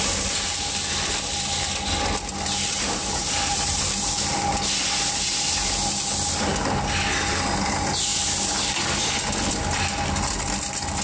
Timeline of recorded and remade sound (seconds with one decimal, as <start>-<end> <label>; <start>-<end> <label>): 0.0-11.0 recorded

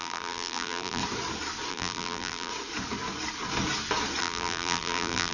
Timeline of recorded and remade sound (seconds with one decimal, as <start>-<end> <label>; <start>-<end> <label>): 0.0-1.0 remade; 1.0-1.7 recorded; 1.7-2.5 remade; 2.5-4.2 recorded; 4.2-5.3 remade

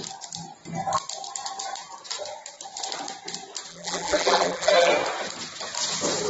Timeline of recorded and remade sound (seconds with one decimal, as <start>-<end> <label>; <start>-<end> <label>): 0.0-3.7 recorded; 3.7-4.9 remade; 4.9-6.3 recorded